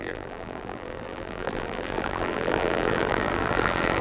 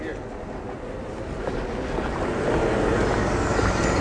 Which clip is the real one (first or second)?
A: second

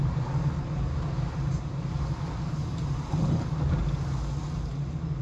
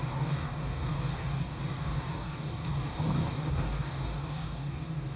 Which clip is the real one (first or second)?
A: first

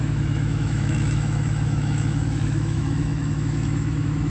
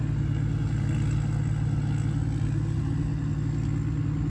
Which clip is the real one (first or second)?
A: second